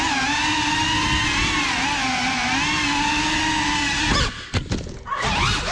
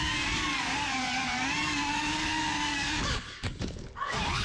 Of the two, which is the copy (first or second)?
second